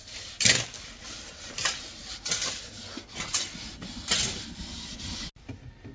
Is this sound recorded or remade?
recorded